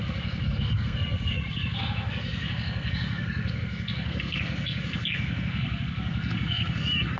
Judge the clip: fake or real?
fake